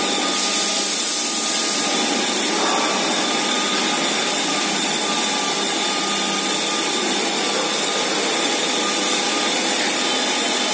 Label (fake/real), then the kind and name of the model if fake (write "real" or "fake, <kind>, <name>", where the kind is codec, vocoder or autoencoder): real